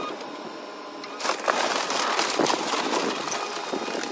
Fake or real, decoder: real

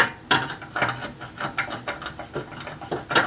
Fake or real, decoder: real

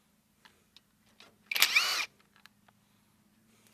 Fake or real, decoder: real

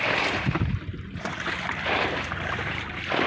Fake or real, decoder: fake, vocoder, BigVGAN v2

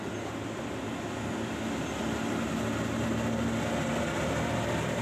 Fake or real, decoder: real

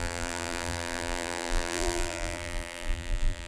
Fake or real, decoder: fake, vocoder, BigVGAN v2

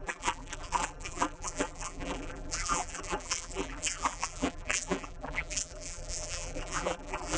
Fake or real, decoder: fake, vocoder, BigVGAN v2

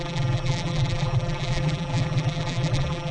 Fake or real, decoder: fake, vocoder, BigVGAN v2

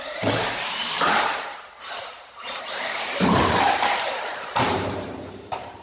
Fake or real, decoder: fake, vocoder, BigVGAN v2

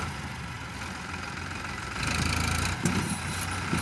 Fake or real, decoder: fake, vocoder, BigVGAN v2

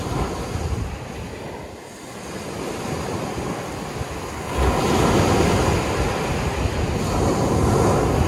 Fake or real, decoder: real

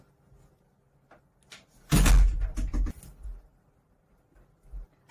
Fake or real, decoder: real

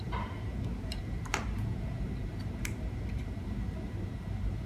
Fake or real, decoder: fake, vocoder, BigVGAN v2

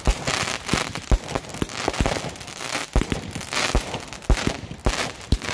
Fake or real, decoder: real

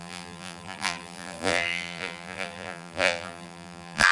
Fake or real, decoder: fake, vocoder, BigVGAN v2